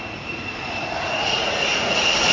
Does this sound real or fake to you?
fake